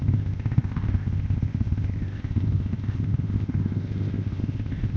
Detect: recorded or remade remade